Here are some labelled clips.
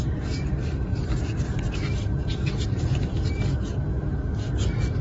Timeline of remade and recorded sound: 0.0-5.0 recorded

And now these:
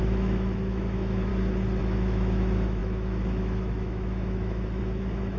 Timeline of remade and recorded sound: 0.0-1.3 remade; 1.3-1.8 recorded; 1.8-5.4 remade

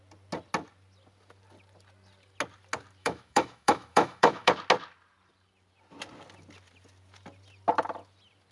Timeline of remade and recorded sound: 0.0-3.0 recorded; 3.0-4.5 remade; 4.5-8.5 recorded

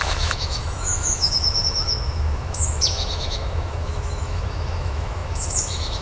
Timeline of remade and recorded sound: 0.0-6.0 remade

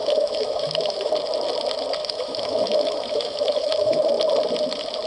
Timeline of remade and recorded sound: 0.0-1.1 remade; 1.1-2.0 recorded; 2.0-4.1 remade; 4.1-5.1 recorded